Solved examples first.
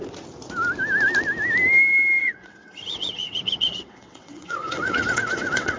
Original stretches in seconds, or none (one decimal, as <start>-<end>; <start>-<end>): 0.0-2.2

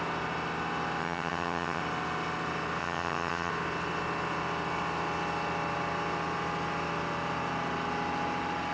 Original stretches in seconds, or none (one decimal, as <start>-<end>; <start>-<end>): 0.0-1.0; 1.8-2.8; 3.5-8.7

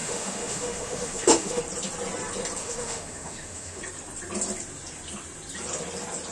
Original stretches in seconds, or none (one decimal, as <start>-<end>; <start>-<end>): 1.6-2.6; 3.8-6.3

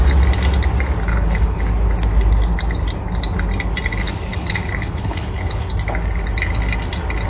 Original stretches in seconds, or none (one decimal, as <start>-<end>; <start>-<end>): 0.0-1.1; 1.6-4.3; 5.6-7.3

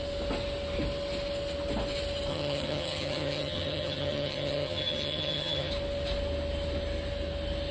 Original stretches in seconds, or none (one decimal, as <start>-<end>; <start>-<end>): 0.0-2.3; 5.7-7.7

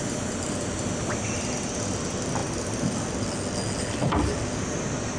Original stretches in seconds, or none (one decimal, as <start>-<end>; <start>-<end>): 0.0-5.2

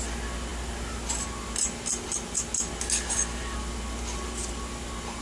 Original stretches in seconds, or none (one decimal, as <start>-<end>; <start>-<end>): 0.0-5.2